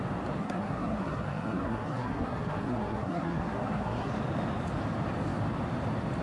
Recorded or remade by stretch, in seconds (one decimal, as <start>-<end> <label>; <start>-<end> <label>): 0.0-0.4 recorded; 0.4-4.1 remade; 4.1-6.2 recorded